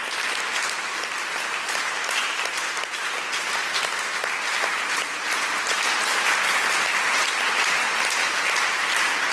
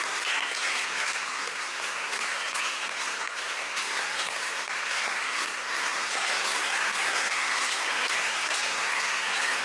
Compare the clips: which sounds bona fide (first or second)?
first